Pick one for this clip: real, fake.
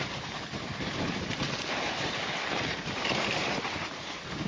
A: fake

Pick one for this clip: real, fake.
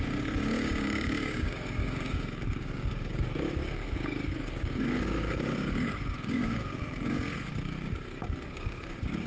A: fake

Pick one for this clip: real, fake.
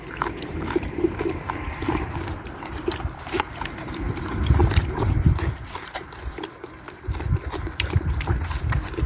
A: fake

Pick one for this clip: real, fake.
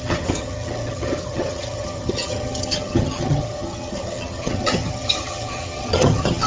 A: fake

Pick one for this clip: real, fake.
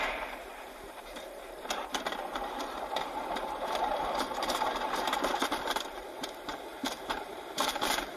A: fake